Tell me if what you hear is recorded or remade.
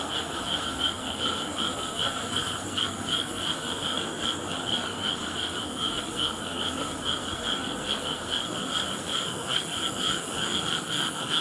remade